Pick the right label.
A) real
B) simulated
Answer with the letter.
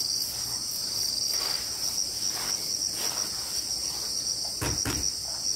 A